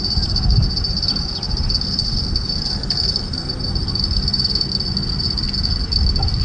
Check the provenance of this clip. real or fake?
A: real